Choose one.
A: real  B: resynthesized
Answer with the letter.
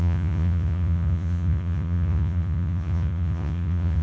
B